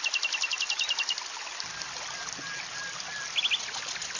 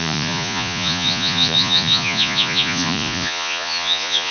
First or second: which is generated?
second